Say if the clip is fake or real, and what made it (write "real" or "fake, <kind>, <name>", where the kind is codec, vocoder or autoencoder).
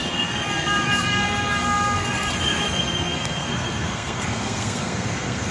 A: fake, codec, SNAC